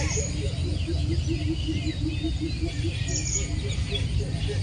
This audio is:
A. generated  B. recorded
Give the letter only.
B